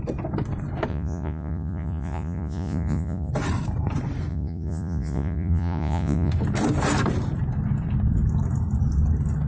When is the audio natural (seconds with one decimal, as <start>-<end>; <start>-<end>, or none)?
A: 0.0-0.9; 3.3-4.3; 6.3-9.5